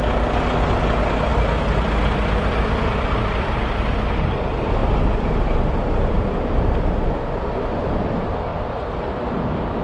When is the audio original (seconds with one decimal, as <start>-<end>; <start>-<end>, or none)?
8.5-9.8